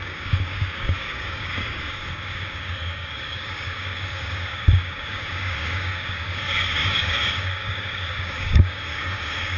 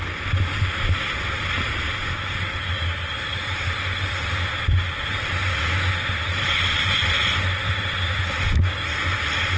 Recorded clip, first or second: second